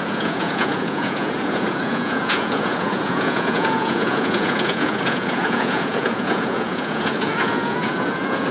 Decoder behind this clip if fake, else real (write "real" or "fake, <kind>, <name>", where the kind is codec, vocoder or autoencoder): fake, vocoder, Vocos